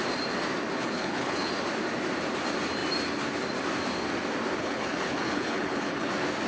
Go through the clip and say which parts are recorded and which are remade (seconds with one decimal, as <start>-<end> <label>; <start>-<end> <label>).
0.0-0.8 recorded; 0.8-1.5 remade; 1.5-4.6 recorded; 4.6-6.1 remade; 6.1-6.5 recorded